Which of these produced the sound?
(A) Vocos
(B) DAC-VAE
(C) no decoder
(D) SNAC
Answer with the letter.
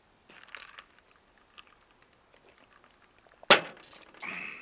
C